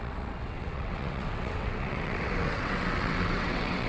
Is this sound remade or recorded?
remade